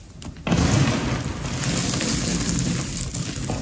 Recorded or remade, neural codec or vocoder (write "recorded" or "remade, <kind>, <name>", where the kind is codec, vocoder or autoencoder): recorded